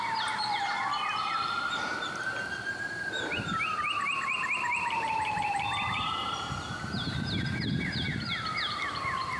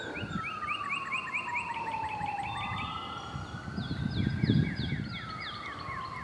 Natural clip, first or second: second